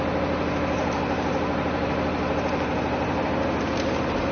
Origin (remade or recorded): recorded